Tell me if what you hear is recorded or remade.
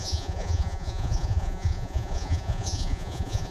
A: remade